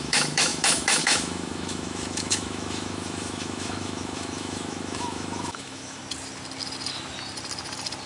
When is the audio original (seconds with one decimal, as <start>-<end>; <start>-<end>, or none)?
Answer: 6.0-8.1